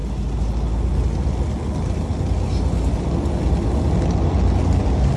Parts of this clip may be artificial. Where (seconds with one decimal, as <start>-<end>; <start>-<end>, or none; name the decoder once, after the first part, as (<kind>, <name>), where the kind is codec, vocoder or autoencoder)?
none